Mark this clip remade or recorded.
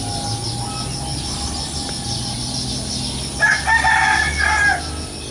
recorded